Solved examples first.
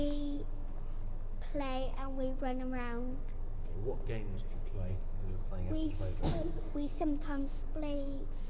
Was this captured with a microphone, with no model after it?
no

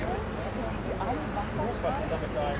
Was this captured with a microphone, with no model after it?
yes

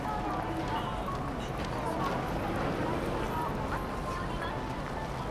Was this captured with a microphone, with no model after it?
yes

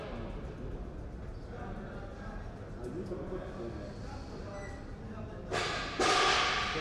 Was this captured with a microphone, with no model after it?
yes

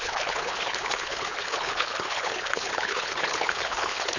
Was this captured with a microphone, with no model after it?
no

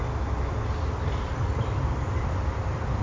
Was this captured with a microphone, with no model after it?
yes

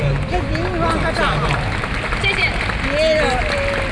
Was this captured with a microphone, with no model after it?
yes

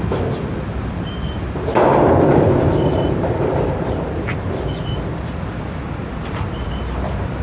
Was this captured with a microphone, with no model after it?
yes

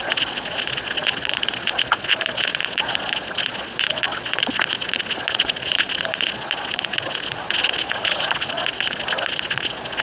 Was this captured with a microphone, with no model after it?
no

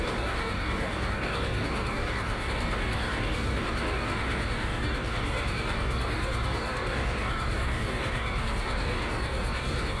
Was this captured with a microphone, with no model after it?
no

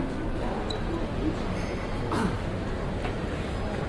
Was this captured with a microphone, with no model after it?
yes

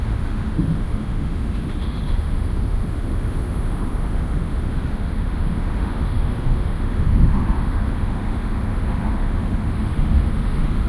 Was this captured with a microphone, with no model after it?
no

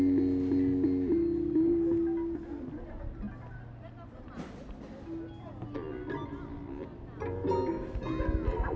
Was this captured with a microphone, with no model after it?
yes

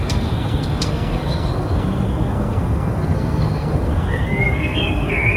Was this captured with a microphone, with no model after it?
no